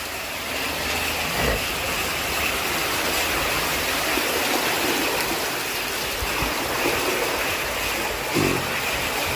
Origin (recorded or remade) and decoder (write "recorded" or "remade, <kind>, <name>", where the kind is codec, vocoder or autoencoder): recorded